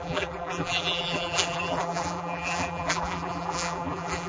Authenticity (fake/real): fake